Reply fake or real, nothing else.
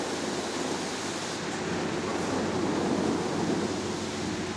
real